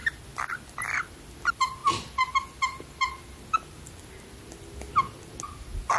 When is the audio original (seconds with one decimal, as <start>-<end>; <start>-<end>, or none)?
0.0-6.0

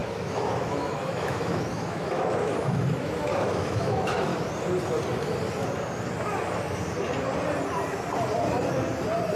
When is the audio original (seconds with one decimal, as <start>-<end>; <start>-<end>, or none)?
4.3-9.3

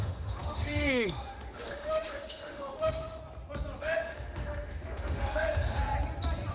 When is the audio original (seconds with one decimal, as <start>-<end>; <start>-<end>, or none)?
3.2-3.8; 5.8-6.5

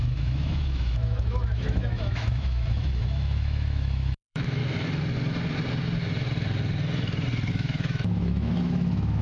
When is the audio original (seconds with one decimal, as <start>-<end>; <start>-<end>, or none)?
4.6-7.5

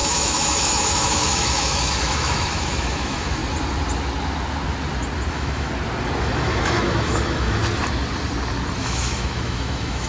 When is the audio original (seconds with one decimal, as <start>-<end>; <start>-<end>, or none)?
3.4-5.3; 5.7-6.2; 7.6-8.8

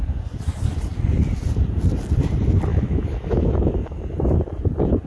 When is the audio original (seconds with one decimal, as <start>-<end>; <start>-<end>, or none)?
0.0-2.7; 3.8-5.1

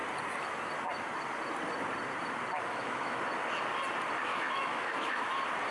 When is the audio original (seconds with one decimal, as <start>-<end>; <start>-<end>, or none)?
0.0-2.6; 3.2-4.3; 5.2-5.7

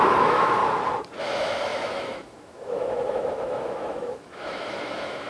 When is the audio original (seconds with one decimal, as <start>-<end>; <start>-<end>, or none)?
0.6-1.2